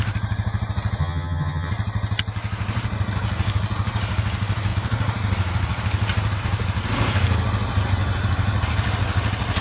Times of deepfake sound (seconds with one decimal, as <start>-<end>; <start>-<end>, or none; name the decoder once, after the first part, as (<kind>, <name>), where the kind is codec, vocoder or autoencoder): 1.0-1.7 (vocoder, HiFi-GAN)